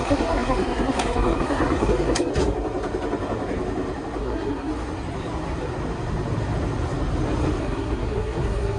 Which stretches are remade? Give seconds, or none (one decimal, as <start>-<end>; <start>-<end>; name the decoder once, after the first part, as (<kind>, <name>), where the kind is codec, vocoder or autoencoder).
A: 0.0-2.3 (codec, SNAC); 4.2-4.7; 7.6-8.8